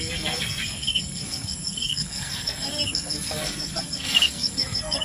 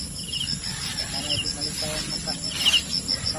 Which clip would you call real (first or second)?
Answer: second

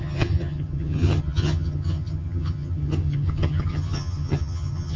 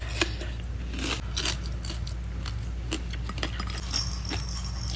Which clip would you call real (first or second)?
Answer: second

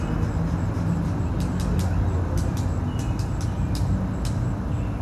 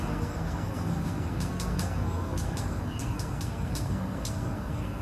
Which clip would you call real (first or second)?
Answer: first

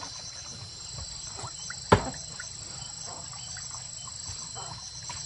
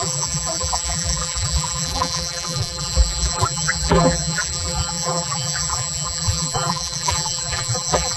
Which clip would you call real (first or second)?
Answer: first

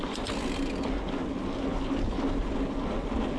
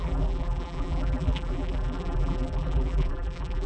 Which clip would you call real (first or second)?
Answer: first